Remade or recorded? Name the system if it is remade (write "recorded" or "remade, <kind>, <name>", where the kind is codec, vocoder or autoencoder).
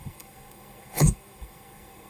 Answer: remade, codec, SNAC